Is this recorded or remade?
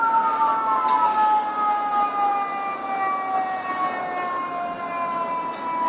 recorded